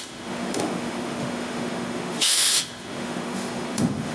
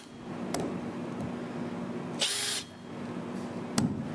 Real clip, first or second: second